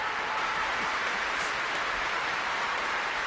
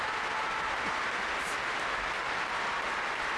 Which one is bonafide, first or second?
second